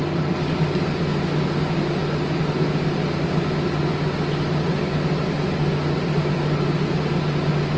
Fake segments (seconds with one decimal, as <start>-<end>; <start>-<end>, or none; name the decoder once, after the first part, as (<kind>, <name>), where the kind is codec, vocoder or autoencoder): none